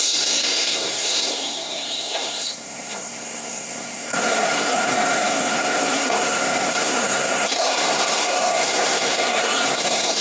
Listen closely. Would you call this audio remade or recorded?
remade